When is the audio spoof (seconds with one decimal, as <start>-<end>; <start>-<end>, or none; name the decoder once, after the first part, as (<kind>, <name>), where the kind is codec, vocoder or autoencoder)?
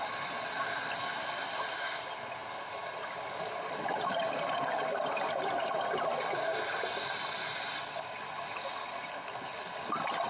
none